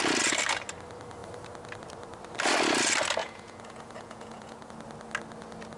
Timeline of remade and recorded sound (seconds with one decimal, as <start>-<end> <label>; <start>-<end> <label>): 0.0-3.2 recorded; 3.2-4.7 remade; 4.7-5.8 recorded